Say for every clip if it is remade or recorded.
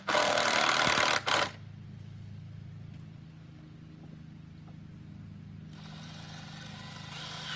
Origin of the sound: recorded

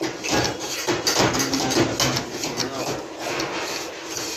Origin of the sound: recorded